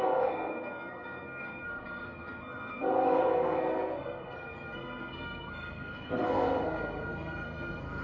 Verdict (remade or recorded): remade